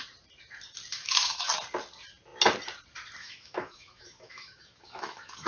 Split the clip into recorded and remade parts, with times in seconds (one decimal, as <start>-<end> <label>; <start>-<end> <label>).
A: 0.0-0.9 recorded; 0.9-1.5 remade; 1.5-3.2 recorded; 3.2-5.5 remade